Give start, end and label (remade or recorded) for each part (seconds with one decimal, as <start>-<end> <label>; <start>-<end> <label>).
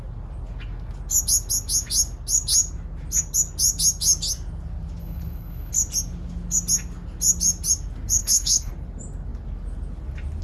0.0-5.0 recorded; 5.0-5.7 remade; 5.7-8.2 recorded; 8.2-8.7 remade; 8.7-10.4 recorded